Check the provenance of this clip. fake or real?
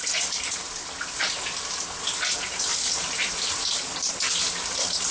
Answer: real